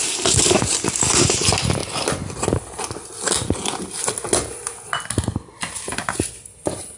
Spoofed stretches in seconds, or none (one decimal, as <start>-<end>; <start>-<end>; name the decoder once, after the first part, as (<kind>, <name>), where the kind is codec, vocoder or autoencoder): none